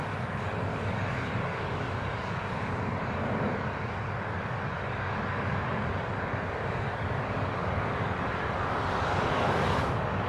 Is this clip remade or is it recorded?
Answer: remade